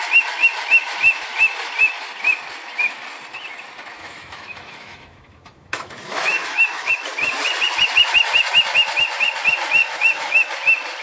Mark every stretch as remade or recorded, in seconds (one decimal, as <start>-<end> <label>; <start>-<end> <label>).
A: 0.0-4.0 recorded; 4.0-6.9 remade; 6.9-9.8 recorded; 9.8-10.5 remade; 10.5-11.0 recorded